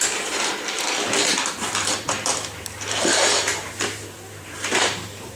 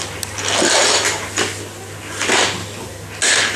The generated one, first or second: first